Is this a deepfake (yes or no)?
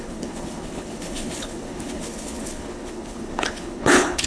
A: yes